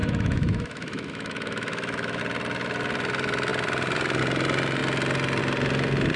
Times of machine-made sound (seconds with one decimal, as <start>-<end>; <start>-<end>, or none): 0.0-2.2